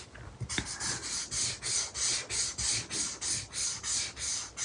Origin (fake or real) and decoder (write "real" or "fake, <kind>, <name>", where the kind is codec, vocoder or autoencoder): real